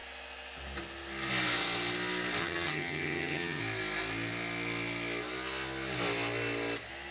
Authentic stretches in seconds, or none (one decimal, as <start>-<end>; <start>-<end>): 0.0-2.4; 3.6-7.1